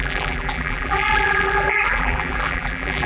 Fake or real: fake